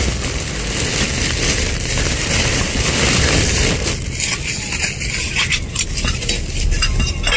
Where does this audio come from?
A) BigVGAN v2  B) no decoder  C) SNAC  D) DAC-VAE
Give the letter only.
B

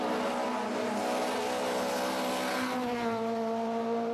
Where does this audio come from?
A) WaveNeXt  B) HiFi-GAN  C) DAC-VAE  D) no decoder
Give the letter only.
D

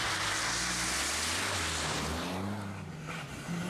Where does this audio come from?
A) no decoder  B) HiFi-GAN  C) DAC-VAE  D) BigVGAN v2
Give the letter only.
A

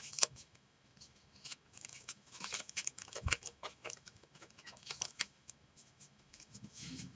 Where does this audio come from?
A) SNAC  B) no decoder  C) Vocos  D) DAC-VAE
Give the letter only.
D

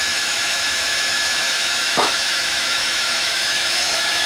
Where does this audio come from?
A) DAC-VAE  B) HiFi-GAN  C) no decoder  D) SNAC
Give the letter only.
A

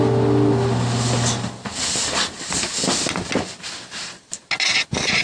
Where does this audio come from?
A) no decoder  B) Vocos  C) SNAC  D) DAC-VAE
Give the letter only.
A